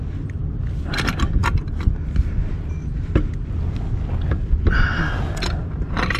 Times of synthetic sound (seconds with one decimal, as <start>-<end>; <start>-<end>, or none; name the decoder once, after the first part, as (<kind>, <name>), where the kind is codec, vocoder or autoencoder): none